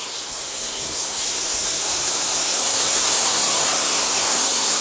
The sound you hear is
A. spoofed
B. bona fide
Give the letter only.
A